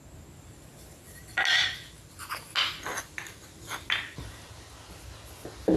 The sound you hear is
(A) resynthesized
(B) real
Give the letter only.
B